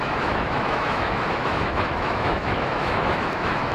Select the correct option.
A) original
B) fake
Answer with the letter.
B